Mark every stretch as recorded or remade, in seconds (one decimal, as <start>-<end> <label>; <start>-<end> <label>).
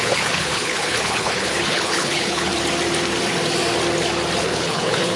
0.0-2.5 remade; 2.5-4.4 recorded; 4.4-5.2 remade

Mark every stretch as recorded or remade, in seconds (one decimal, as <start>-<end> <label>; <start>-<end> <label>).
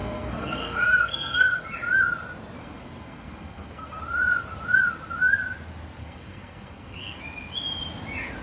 0.0-1.6 remade; 1.6-2.6 recorded; 2.6-4.0 remade; 4.0-6.0 recorded; 6.0-7.2 remade; 7.2-8.4 recorded